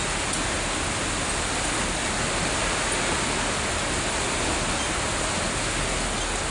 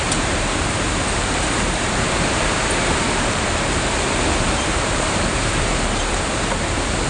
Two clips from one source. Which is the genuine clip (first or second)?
first